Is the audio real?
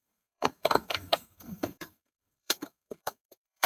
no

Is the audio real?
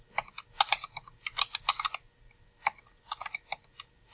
yes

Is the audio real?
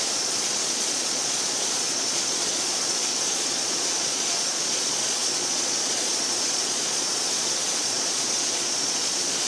no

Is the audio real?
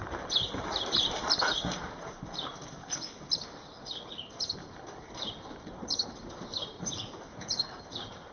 no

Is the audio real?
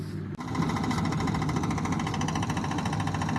yes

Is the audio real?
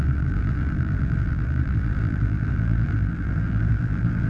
no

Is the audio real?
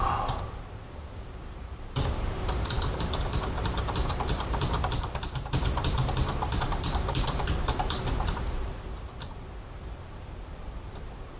no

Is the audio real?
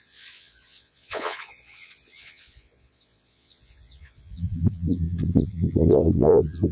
no